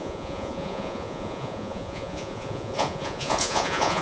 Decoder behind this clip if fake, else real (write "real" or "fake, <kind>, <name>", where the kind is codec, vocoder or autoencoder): fake, vocoder, Vocos